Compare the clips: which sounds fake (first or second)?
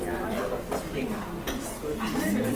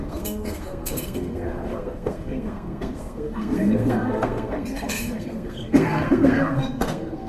second